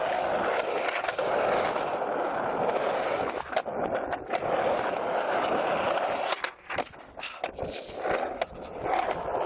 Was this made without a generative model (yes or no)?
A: yes